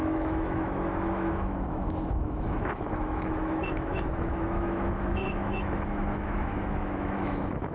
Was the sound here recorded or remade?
remade